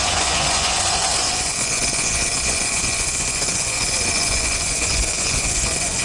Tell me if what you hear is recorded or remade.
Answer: remade